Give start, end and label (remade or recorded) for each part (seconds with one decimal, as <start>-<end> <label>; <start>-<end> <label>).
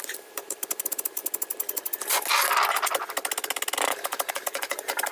0.0-1.2 remade; 1.2-4.3 recorded; 4.3-5.1 remade